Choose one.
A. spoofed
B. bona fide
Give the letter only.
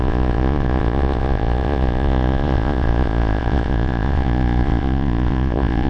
A